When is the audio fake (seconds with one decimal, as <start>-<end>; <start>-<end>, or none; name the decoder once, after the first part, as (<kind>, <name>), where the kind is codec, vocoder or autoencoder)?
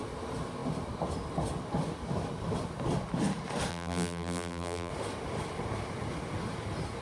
3.7-4.9 (vocoder, BigVGAN v2)